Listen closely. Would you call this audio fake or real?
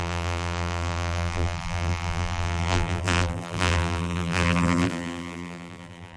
fake